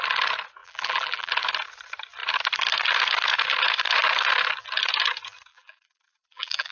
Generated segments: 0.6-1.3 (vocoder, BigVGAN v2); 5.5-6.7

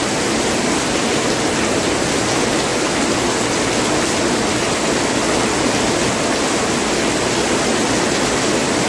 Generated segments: none